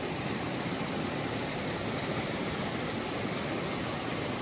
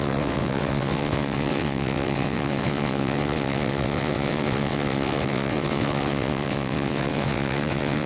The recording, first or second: first